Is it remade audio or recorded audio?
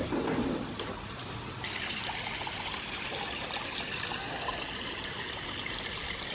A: recorded